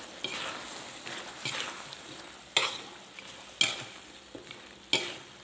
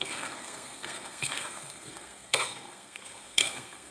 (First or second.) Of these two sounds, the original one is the first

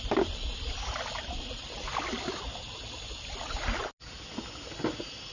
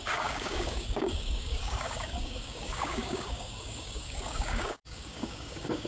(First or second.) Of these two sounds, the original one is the first